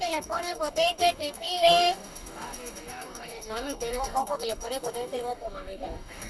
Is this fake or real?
fake